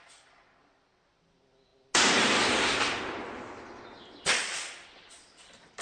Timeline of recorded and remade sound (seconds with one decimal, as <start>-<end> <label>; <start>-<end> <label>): 0.0-5.8 recorded